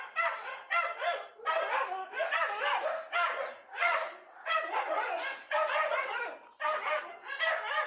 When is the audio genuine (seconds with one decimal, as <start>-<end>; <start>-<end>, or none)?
0.0-3.4; 6.2-7.9